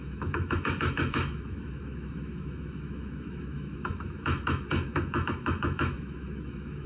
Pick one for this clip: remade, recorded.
remade